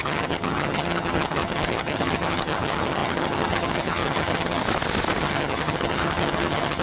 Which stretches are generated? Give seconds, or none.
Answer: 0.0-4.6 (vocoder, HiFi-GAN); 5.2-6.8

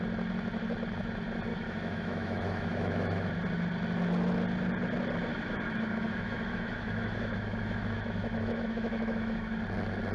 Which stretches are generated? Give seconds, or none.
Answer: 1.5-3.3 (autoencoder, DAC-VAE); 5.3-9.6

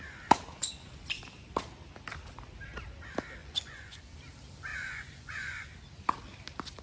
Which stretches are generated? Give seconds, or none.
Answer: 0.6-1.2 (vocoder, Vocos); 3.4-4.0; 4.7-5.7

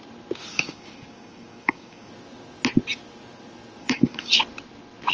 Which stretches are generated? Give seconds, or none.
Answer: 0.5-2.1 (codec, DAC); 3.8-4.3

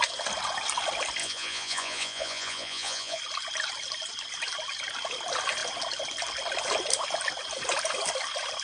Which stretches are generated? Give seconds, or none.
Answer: 1.2-3.2 (vocoder, Vocos)

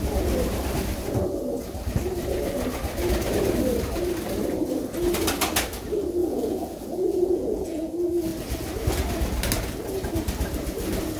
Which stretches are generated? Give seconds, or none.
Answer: 6.2-7.9 (vocoder, Vocos)

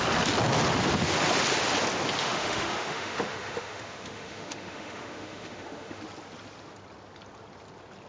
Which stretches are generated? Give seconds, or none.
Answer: 2.2-6.0 (autoencoder, DAC-VAE)

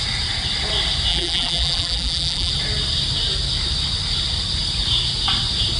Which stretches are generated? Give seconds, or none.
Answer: 1.1-2.5 (vocoder, BigVGAN v2)